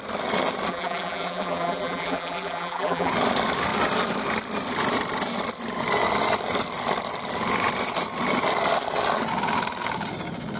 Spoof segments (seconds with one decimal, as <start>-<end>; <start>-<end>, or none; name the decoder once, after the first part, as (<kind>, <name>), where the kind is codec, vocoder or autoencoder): 0.7-3.1 (vocoder, BigVGAN v2)